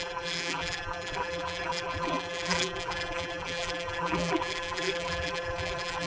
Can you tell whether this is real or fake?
fake